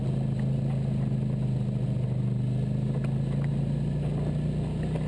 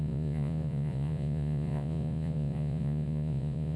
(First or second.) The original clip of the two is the first